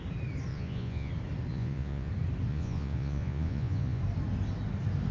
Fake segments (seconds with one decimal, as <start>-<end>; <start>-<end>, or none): 0.5-1.1; 1.5-2.1; 2.5-4.0